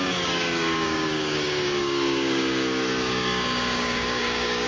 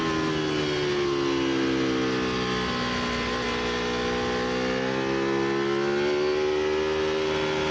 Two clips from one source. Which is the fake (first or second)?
first